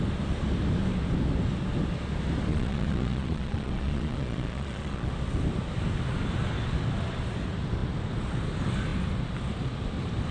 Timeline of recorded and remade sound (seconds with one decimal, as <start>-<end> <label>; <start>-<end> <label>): 0.0-2.5 recorded; 2.5-5.1 remade; 5.1-10.3 recorded